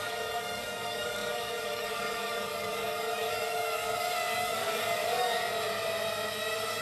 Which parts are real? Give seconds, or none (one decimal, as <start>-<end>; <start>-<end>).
5.4-6.8

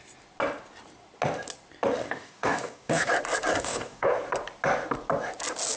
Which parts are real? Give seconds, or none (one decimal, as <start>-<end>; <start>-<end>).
0.0-2.0; 3.1-3.5; 4.1-5.8

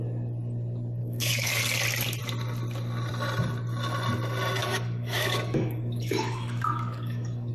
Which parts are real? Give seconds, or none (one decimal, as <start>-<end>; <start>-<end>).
0.0-1.0; 1.6-4.6

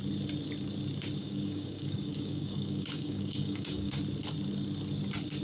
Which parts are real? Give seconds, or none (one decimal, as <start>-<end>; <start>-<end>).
0.0-1.2; 4.0-5.4

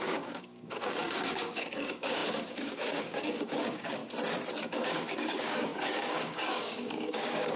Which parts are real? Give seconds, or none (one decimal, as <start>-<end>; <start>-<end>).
4.0-4.6

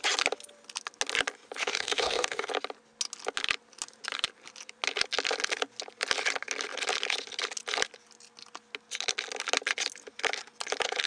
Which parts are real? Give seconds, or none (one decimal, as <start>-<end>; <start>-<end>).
0.0-1.6; 2.5-11.1

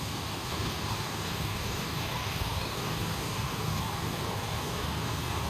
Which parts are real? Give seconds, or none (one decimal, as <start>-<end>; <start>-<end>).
none